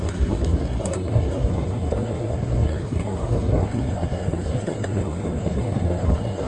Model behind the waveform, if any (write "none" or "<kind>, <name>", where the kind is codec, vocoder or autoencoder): codec, SNAC